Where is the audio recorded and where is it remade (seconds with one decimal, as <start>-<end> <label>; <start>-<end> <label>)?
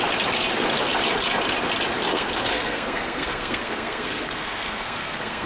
0.0-2.1 recorded; 2.1-5.5 remade